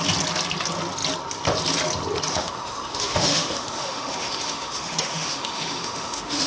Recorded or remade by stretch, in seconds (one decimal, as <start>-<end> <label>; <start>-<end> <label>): 0.0-2.3 recorded; 2.3-6.5 remade